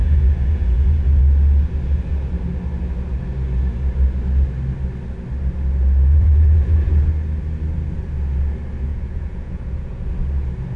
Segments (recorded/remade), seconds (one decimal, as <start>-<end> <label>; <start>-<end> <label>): 0.0-1.2 remade; 1.2-6.1 recorded; 6.1-7.1 remade; 7.1-8.9 recorded; 8.9-10.1 remade; 10.1-10.8 recorded